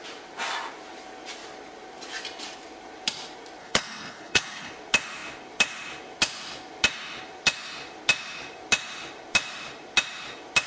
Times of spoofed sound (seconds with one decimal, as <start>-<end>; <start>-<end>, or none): 3.6-4.7